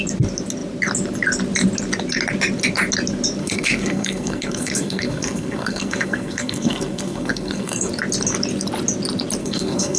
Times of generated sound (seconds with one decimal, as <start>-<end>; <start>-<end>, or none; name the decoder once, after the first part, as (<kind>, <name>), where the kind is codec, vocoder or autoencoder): 3.4-7.9 (codec, SNAC); 9.4-10.0